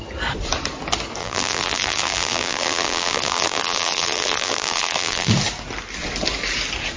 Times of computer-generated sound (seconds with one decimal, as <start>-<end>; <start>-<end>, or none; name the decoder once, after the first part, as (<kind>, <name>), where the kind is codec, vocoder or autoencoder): 1.2-5.3 (vocoder, BigVGAN v2)